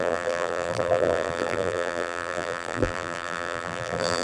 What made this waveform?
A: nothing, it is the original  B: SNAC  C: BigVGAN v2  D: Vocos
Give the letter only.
C